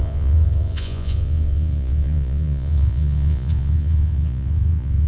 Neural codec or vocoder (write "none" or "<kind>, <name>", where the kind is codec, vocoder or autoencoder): vocoder, Vocos